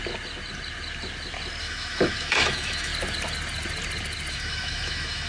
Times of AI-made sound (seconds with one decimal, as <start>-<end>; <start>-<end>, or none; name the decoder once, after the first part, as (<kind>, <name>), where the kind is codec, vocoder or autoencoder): 1.6-2.9 (autoencoder, DAC-VAE); 4.3-5.3